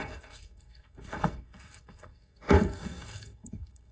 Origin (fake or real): fake